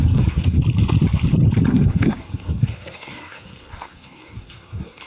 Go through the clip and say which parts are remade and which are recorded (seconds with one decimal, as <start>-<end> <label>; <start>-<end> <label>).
0.0-0.6 remade; 0.6-1.7 recorded; 1.7-5.1 remade